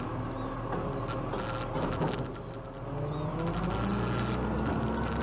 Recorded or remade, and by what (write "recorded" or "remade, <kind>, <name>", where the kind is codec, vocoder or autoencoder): recorded